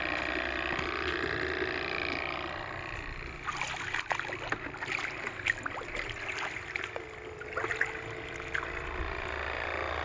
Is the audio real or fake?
real